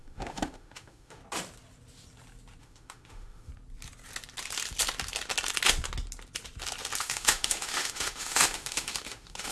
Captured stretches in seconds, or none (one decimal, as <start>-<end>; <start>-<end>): 1.2-2.6; 3.5-7.0